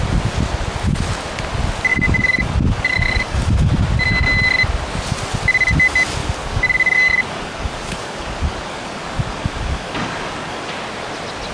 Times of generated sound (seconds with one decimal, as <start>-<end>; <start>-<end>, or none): 1.9-3.7; 6.2-10.7